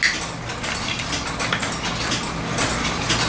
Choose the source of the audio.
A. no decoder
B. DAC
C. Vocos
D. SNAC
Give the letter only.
A